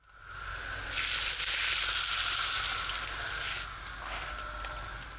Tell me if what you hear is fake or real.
real